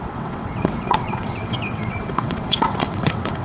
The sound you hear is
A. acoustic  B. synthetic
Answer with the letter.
B